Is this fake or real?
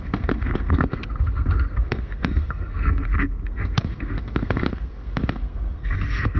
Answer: fake